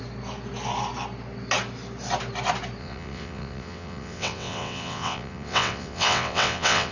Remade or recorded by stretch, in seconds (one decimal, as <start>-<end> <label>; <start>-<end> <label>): 0.0-2.8 recorded; 2.8-6.9 remade